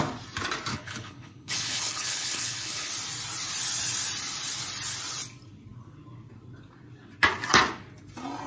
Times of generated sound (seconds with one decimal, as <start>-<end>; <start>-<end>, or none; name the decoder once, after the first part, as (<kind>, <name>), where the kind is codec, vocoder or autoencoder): 0.7-2.9 (codec, HILCodec)